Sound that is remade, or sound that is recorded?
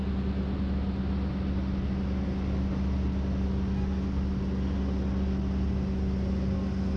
recorded